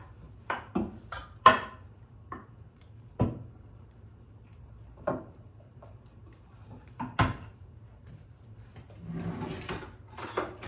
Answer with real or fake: fake